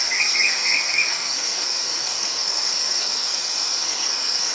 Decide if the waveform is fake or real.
fake